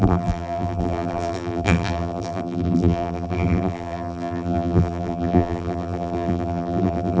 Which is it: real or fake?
fake